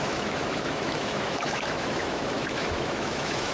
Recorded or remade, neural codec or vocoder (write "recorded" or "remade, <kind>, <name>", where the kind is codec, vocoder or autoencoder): remade, autoencoder, DAC-VAE